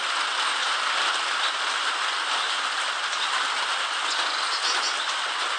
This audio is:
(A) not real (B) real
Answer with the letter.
B